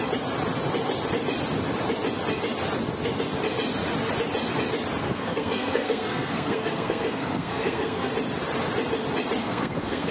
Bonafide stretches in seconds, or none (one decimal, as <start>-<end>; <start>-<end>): 0.0-5.0; 8.1-9.4